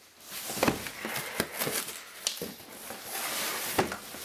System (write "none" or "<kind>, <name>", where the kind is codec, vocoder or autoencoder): none